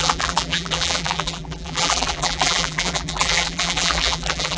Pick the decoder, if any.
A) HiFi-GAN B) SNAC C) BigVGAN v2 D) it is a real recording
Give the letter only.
C